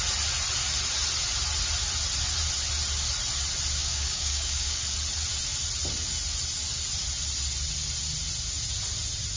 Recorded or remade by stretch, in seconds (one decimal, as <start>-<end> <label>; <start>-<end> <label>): 0.0-3.8 recorded; 3.8-4.8 remade; 4.8-9.4 recorded